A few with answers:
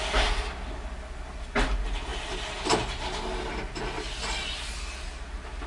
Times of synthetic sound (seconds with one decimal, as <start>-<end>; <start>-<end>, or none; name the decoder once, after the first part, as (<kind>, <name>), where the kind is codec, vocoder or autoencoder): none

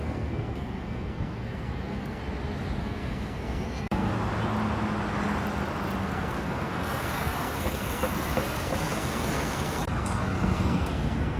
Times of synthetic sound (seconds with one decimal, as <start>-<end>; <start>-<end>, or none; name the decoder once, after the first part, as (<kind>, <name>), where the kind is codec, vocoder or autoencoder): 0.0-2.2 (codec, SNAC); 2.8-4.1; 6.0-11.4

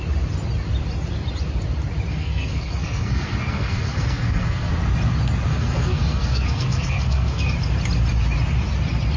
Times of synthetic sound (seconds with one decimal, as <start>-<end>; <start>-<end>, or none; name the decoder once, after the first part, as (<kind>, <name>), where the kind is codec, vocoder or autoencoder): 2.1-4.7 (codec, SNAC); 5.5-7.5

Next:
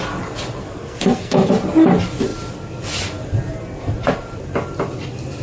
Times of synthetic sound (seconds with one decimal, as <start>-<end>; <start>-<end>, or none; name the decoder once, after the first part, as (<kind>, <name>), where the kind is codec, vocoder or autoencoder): 0.6-1.5 (codec, SNAC)

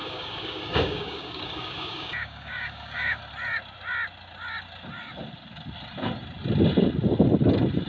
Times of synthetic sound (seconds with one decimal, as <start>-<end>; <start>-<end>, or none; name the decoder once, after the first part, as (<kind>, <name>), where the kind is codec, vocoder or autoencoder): 0.0-3.2 (codec, DAC)

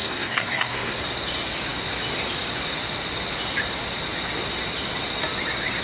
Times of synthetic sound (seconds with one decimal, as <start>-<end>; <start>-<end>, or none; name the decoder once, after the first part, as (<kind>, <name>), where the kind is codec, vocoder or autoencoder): 0.0-1.0 (codec, SNAC)

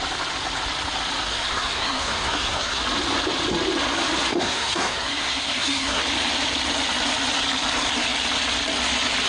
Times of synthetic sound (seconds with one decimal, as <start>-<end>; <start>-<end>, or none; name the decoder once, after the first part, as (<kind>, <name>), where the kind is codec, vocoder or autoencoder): 1.3-2.8 (codec, SNAC); 4.3-6.0

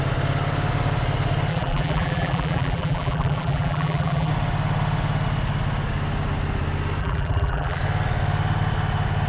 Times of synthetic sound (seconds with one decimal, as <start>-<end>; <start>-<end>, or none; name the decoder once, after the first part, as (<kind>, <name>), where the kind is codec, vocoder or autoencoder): 1.5-4.3 (vocoder, BigVGAN v2); 7.0-7.8